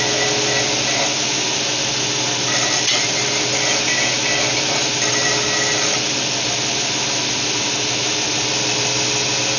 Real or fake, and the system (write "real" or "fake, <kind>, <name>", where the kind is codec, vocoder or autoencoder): real